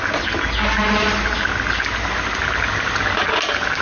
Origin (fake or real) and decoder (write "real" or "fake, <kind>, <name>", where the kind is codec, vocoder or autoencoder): real